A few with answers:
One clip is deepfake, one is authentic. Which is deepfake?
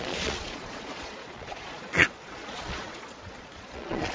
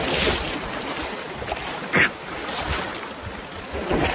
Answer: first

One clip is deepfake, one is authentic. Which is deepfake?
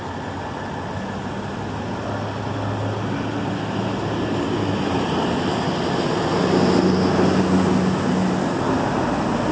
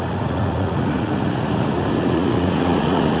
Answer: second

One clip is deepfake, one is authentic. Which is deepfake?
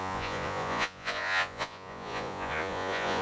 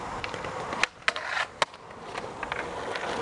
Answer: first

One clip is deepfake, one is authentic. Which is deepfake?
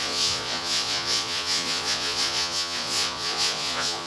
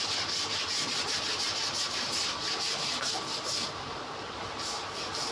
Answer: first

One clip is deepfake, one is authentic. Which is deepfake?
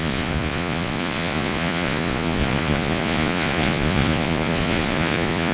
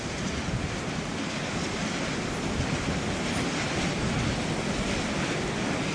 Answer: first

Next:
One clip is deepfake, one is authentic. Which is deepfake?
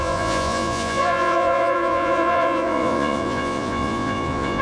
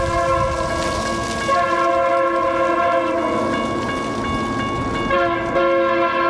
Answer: first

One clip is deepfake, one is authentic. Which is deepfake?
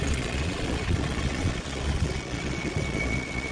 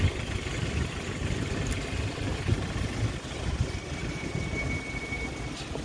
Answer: first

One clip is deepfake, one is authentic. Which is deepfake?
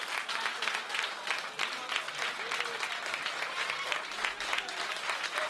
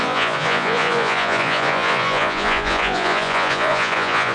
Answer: second